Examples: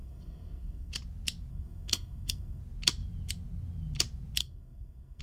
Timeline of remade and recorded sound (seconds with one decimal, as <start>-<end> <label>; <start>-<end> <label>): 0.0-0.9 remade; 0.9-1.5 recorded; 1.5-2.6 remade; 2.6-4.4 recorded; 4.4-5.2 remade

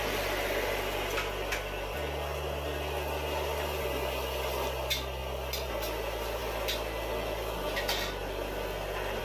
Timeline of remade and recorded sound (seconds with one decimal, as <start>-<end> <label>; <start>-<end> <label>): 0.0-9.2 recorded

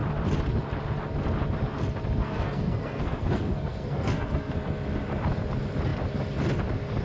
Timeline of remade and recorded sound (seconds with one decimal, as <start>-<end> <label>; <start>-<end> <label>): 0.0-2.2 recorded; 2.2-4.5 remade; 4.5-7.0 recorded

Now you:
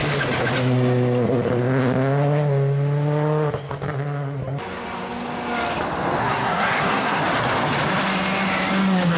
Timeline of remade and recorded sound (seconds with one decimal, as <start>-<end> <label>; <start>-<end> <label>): 0.0-6.2 recorded; 6.2-7.2 remade; 7.2-9.2 recorded

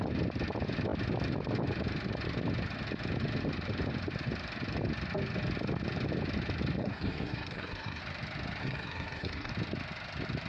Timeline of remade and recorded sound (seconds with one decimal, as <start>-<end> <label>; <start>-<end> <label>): 0.0-6.8 recorded; 6.8-8.0 remade; 8.0-8.6 recorded; 8.6-9.5 remade; 9.5-10.5 recorded

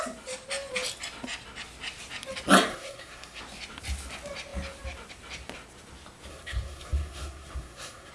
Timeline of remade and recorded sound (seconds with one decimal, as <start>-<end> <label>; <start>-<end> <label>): 0.0-2.7 recorded; 2.7-3.4 remade; 3.4-6.3 recorded; 6.3-8.1 remade

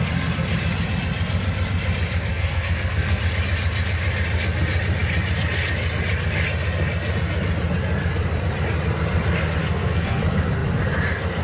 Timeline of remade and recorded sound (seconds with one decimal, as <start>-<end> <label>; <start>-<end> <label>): 0.0-2.3 recorded; 2.3-3.2 remade; 3.2-9.6 recorded; 9.6-10.2 remade; 10.2-11.4 recorded

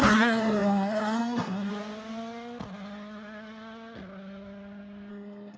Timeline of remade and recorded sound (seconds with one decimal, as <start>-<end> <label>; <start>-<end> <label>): 0.0-1.7 remade; 1.7-5.1 recorded; 5.1-5.6 remade